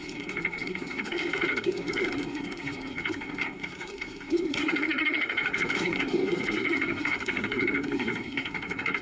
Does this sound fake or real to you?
fake